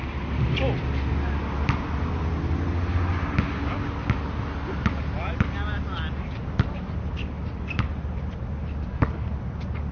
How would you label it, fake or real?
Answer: real